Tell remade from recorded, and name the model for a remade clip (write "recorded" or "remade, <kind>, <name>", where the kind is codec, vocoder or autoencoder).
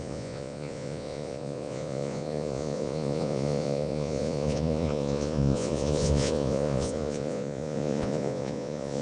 remade, vocoder, Vocos